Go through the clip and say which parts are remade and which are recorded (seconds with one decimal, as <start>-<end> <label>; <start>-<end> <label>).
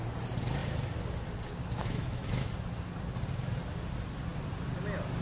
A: 0.0-1.8 recorded; 1.8-2.5 remade; 2.5-5.2 recorded